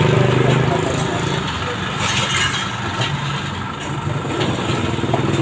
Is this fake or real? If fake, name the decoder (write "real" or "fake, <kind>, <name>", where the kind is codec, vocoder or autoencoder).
real